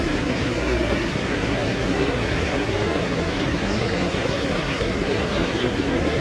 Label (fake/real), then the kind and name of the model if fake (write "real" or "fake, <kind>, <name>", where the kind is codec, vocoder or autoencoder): fake, codec, SNAC